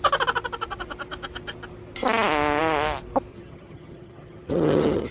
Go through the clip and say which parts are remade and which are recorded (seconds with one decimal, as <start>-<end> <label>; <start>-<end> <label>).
0.0-3.3 recorded; 3.3-5.1 remade